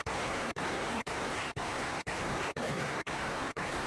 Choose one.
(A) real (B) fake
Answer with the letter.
B